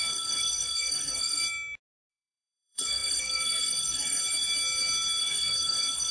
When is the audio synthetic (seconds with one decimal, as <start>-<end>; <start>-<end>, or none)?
0.0-1.4; 2.1-4.2; 5.2-6.1